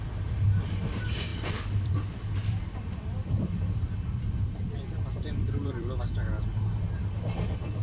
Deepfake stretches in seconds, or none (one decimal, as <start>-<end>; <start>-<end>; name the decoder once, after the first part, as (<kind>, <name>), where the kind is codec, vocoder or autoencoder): 1.3-6.0 (vocoder, BigVGAN v2)